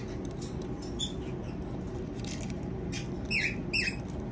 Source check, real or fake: real